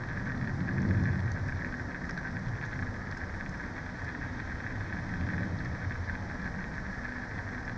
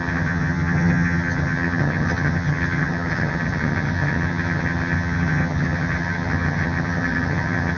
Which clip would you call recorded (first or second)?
first